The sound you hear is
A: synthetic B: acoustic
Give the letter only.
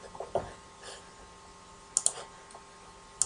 B